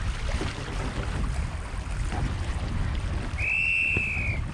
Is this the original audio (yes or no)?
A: yes